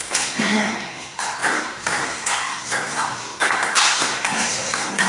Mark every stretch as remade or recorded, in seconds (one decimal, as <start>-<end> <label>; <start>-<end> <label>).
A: 0.0-5.1 remade